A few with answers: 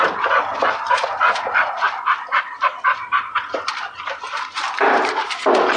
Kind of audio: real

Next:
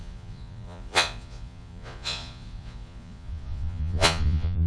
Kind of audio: fake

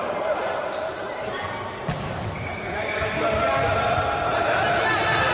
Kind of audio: real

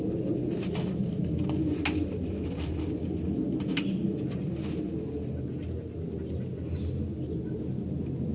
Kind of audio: real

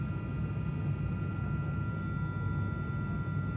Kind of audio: real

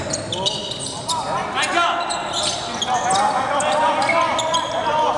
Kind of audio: real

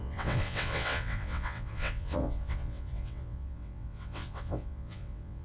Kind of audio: fake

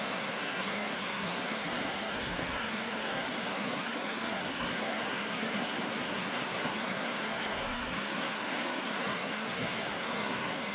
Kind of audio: fake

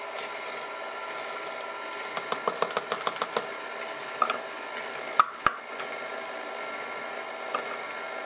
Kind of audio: real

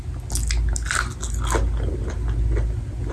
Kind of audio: real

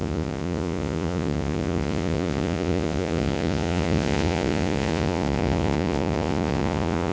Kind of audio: fake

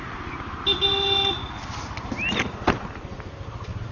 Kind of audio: real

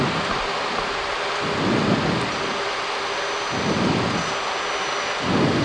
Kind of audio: real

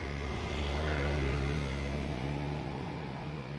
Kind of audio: fake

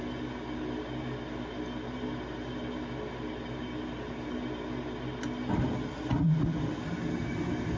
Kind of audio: real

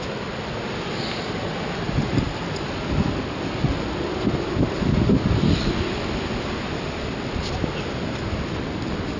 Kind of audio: real